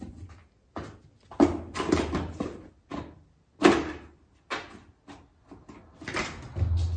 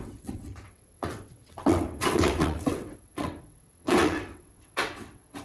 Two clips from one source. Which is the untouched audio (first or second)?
first